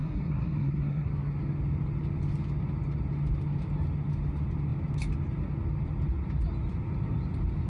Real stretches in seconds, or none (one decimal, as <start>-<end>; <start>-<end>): 1.1-7.7